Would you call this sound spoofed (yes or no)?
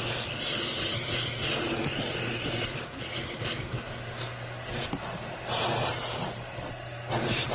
no